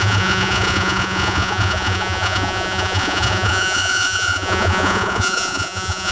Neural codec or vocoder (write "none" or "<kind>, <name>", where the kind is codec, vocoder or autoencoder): vocoder, Vocos